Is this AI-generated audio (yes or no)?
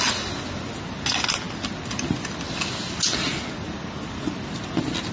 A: no